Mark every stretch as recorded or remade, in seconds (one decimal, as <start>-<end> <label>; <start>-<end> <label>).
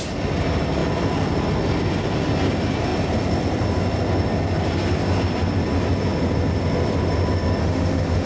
0.0-7.6 recorded; 7.6-8.3 remade